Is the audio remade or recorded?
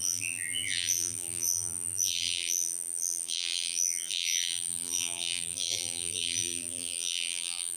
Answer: remade